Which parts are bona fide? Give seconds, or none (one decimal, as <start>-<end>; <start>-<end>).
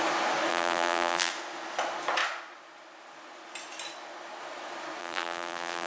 0.0-0.5; 1.3-5.0